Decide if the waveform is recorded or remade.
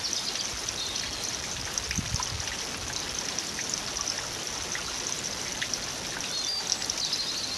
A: recorded